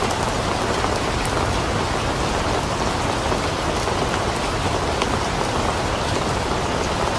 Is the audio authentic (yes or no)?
yes